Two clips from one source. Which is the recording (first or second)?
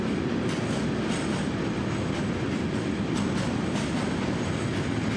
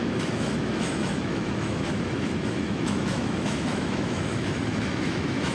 first